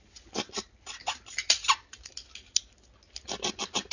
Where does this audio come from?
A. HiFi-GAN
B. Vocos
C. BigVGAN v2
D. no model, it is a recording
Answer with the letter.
D